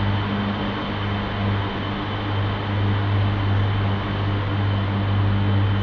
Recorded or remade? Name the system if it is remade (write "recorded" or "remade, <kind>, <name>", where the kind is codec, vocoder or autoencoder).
recorded